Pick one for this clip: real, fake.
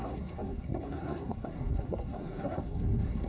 fake